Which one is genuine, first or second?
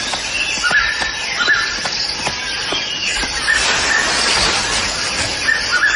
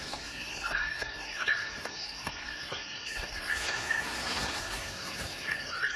first